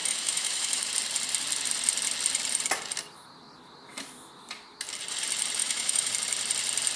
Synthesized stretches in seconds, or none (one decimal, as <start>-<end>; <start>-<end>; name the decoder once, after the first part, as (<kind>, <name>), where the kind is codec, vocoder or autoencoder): 0.0-0.9 (autoencoder, DAC-VAE); 5.6-6.1